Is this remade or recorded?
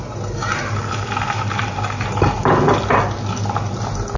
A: recorded